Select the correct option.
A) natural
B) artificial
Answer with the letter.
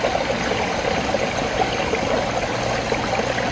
A